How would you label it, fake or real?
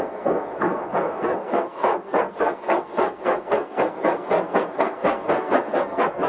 fake